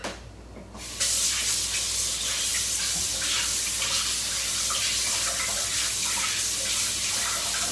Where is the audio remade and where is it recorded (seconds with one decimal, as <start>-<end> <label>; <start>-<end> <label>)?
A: 0.0-7.7 recorded